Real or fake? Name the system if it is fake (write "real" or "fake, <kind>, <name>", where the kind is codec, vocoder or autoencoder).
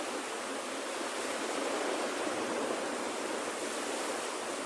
real